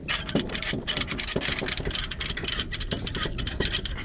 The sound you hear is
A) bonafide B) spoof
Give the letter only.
A